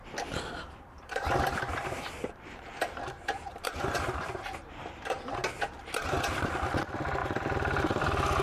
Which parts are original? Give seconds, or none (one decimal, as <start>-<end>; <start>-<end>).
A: 0.0-0.6; 5.6-7.2; 8.0-8.4